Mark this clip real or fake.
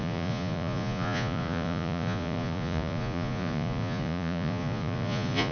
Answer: fake